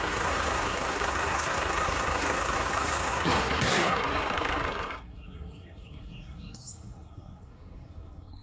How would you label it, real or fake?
fake